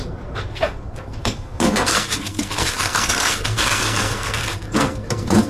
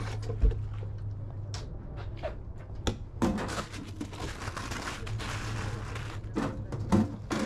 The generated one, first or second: first